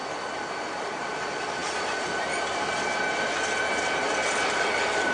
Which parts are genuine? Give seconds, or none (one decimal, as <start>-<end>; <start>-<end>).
0.0-5.1